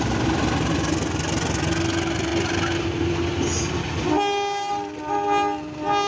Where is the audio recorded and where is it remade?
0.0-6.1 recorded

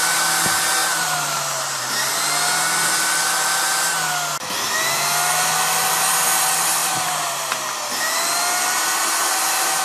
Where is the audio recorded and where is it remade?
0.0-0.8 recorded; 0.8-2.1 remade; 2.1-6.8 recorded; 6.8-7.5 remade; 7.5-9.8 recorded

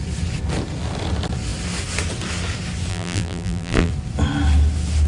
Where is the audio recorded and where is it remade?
0.0-2.9 recorded; 2.9-3.9 remade; 3.9-5.1 recorded

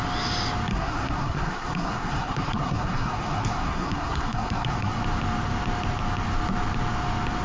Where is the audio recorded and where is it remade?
0.0-0.7 recorded; 0.7-5.0 remade; 5.0-7.4 recorded

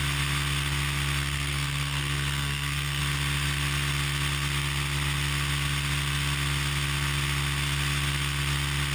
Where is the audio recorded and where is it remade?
0.0-1.2 recorded; 1.2-3.0 remade; 3.0-8.9 recorded

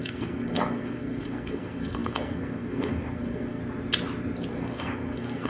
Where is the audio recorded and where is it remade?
0.0-3.6 remade; 3.6-4.5 recorded; 4.5-5.5 remade

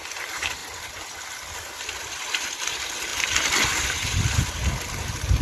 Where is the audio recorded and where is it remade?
0.0-5.4 recorded

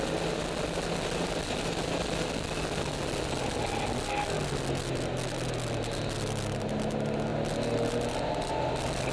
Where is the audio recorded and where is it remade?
0.0-9.1 recorded